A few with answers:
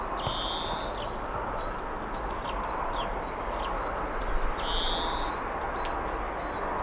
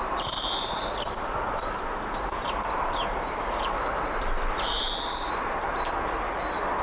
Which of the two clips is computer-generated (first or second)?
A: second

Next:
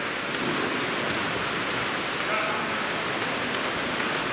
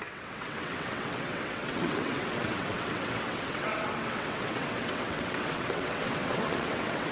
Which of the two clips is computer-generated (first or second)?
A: second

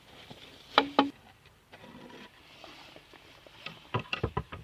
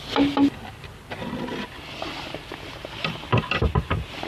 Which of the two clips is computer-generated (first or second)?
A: first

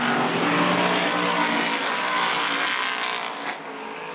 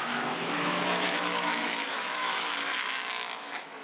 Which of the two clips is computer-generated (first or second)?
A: second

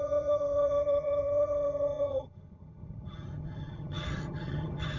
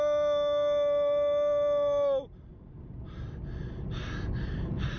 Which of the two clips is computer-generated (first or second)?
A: first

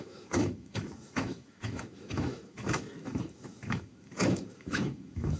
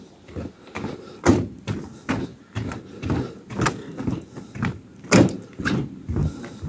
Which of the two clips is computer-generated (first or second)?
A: first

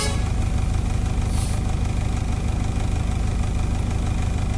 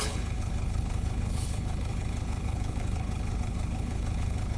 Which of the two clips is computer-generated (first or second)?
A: second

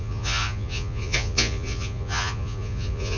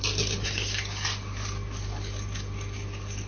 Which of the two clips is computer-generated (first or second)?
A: first